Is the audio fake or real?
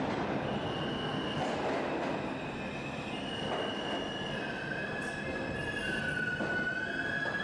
real